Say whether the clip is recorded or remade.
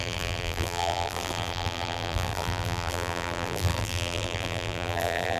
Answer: remade